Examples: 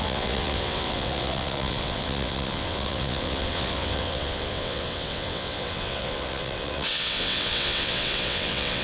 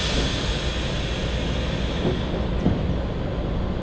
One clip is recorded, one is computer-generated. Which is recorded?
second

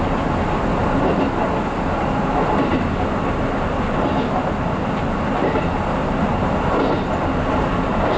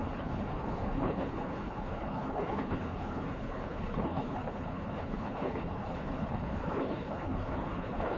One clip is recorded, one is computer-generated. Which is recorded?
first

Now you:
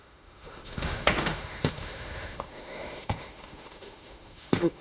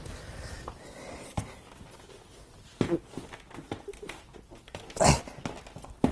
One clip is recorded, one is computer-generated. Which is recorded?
second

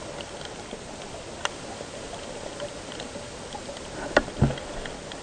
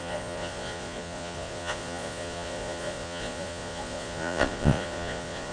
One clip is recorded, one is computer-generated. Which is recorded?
first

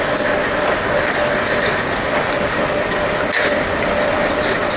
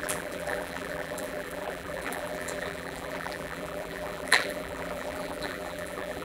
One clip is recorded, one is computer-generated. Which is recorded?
first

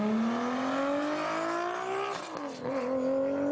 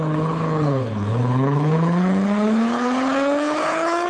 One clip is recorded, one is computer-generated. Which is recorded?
first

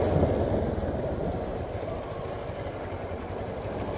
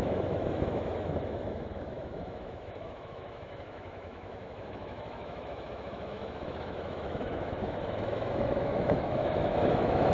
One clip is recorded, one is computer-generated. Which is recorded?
first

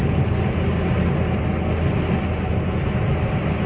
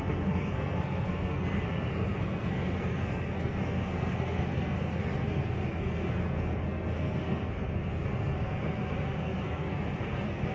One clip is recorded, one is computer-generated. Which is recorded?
first